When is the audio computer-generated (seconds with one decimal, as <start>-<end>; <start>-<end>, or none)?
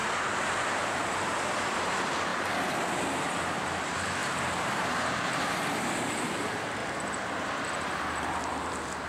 0.7-2.3; 3.3-6.8; 8.3-9.1